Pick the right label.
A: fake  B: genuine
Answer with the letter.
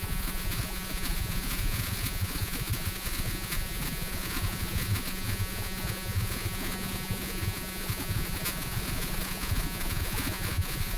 A